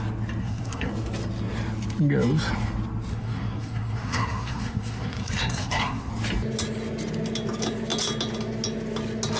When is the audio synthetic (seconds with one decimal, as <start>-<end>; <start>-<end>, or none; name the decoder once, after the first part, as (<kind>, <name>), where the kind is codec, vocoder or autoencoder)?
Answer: 0.4-0.9 (codec, SNAC); 3.1-6.1